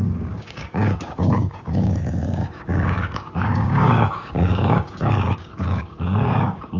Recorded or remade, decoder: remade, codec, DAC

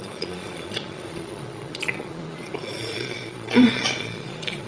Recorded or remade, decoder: remade, vocoder, Vocos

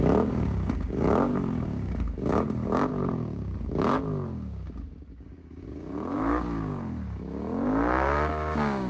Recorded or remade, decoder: remade, codec, DAC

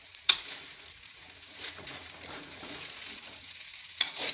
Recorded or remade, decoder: remade, vocoder, Vocos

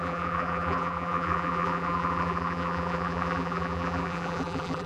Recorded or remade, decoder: remade, vocoder, BigVGAN v2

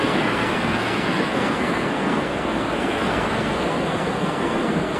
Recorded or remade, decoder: remade, codec, SNAC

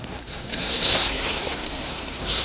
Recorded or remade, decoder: remade, codec, SNAC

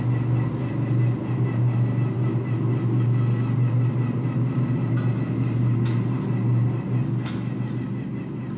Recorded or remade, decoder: recorded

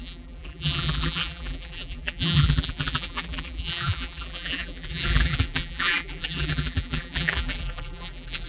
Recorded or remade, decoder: remade, vocoder, BigVGAN v2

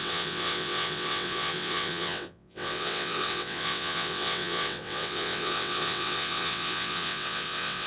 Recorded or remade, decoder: remade, vocoder, WaveNeXt